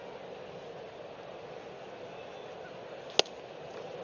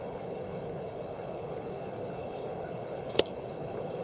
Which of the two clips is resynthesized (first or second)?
second